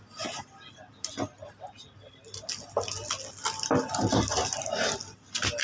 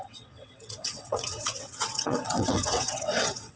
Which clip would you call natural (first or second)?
first